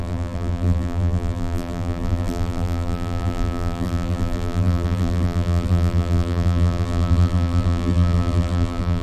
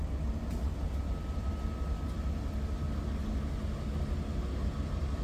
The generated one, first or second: first